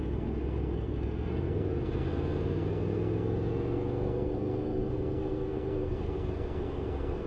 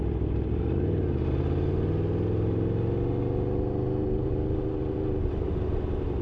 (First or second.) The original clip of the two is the second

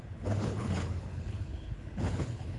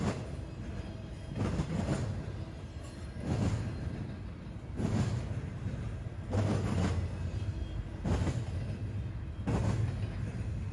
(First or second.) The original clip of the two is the second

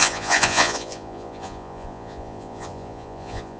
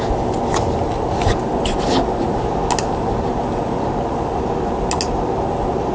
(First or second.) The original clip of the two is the second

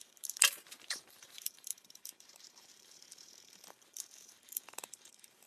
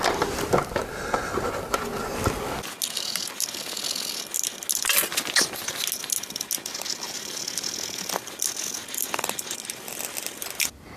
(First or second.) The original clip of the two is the second